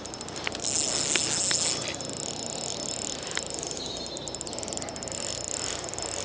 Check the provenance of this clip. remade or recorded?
recorded